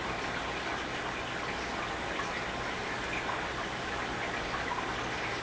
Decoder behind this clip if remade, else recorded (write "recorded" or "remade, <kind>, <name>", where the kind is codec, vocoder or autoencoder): recorded